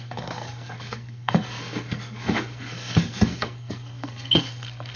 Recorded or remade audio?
remade